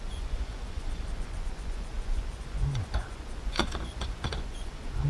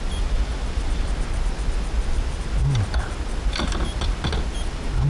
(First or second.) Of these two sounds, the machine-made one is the first